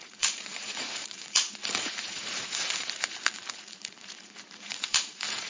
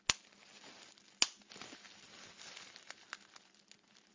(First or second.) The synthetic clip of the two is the first